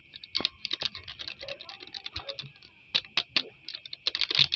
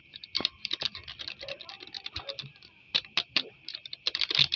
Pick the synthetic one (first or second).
second